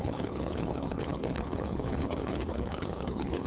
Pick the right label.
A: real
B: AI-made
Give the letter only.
B